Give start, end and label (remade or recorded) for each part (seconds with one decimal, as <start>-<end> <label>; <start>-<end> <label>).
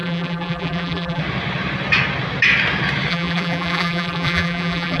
0.0-1.2 remade; 1.2-3.1 recorded; 3.1-5.0 remade